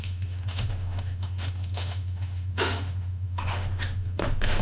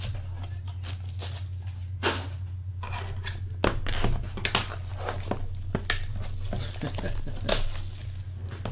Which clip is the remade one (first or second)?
first